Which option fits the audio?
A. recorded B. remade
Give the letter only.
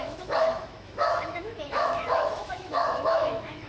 B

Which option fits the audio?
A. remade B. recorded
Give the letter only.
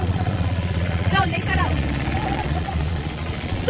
A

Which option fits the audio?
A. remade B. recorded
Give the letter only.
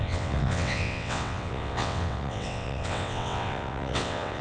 A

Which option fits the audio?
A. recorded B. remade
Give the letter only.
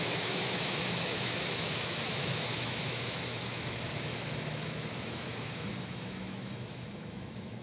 B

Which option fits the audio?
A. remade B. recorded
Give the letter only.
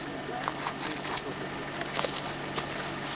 B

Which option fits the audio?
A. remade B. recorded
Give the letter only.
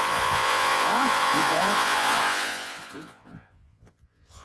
A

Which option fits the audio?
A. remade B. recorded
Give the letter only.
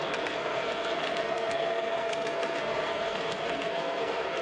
A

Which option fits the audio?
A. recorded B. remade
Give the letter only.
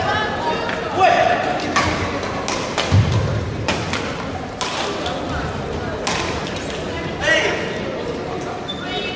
A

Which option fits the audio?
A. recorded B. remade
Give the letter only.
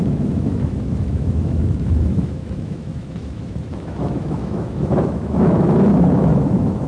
B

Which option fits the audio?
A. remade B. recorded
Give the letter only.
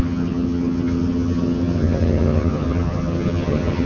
A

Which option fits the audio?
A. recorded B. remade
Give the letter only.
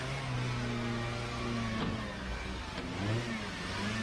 A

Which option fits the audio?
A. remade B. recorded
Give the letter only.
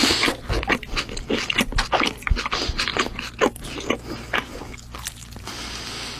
B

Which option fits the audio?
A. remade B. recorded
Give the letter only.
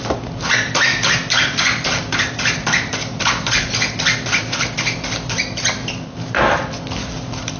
B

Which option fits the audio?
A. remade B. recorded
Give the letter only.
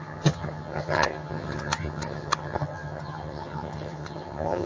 A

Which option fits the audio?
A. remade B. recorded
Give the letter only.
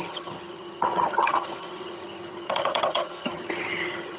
A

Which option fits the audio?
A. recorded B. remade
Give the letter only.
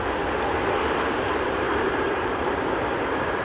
B